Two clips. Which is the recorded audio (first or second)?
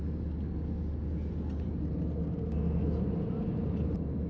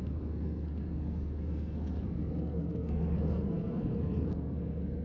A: first